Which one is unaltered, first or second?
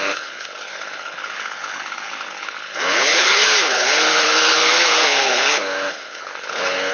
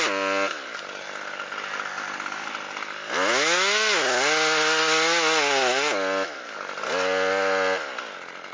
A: second